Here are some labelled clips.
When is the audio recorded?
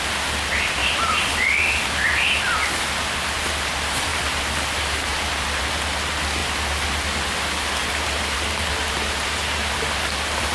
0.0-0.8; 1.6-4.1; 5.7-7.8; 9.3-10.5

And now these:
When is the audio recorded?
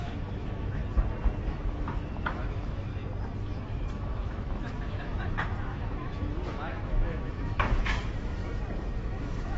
0.8-1.5; 2.9-3.6; 8.4-9.0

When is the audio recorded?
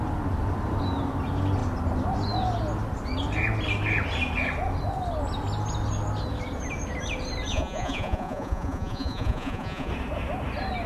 0.0-7.5; 9.9-10.9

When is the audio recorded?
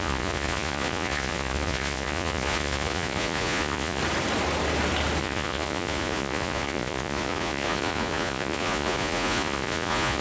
4.0-5.2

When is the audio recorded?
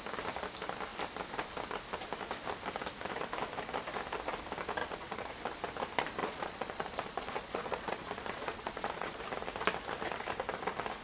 0.0-4.8; 5.3-6.2; 9.2-11.0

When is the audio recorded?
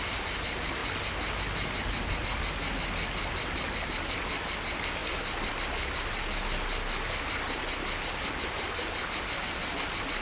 0.0-10.2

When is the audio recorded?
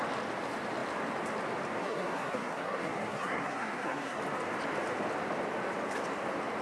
0.0-1.8; 4.2-6.6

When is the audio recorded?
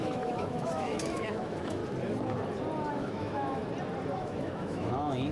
1.8-2.9; 3.6-4.2